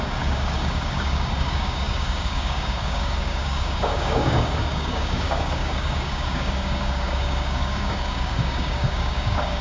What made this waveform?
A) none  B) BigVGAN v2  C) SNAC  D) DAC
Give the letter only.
D